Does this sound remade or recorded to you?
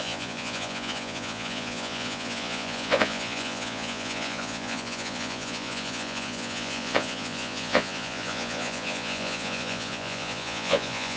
remade